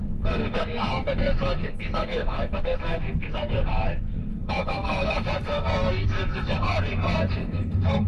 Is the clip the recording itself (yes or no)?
no